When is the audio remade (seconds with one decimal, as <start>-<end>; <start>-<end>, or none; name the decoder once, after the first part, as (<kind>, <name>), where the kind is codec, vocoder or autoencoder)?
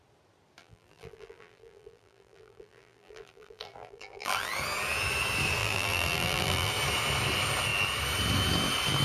0.6-4.5 (vocoder, BigVGAN v2); 5.6-6.7